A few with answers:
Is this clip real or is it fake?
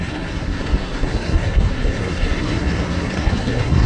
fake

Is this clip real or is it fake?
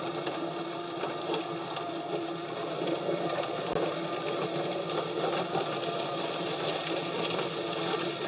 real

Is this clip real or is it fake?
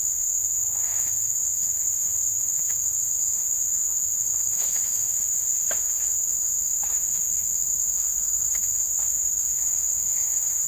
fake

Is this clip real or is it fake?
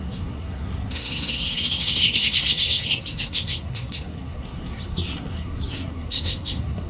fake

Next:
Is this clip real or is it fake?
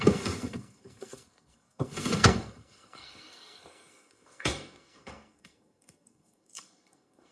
fake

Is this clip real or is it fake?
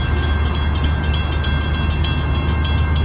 real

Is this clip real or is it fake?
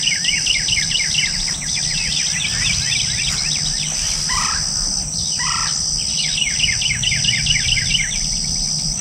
real